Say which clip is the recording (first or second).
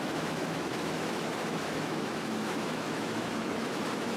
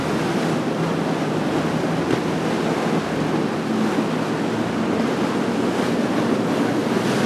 second